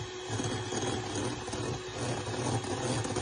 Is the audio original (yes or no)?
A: yes